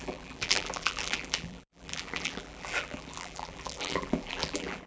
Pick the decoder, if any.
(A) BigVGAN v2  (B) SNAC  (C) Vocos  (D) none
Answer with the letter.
A